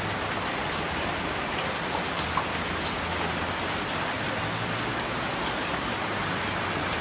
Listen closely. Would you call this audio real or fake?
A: real